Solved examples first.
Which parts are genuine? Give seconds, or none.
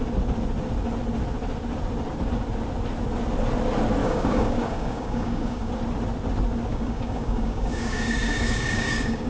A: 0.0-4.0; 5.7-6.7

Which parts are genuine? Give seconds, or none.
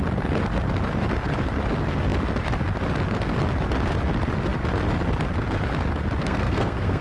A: 0.0-6.2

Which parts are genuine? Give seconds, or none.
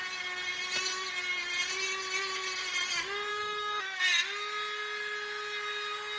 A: 0.0-3.3; 4.0-6.2